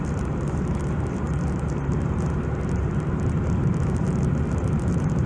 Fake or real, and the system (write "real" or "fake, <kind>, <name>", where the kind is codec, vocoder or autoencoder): fake, vocoder, BigVGAN v2